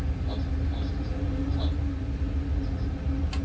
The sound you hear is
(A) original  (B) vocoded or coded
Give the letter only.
A